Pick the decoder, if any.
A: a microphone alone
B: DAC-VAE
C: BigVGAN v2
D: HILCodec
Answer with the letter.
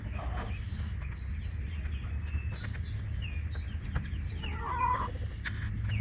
A